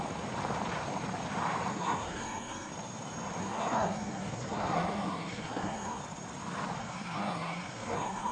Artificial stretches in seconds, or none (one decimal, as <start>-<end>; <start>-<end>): 1.7-2.7; 3.4-6.0; 6.8-8.3